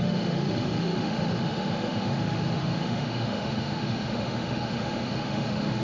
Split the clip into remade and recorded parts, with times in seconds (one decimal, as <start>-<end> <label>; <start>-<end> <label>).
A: 0.0-5.8 remade